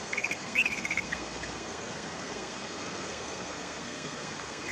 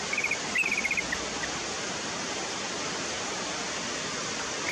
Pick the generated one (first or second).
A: first